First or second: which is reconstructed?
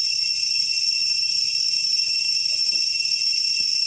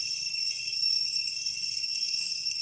second